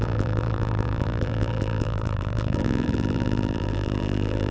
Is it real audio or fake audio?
fake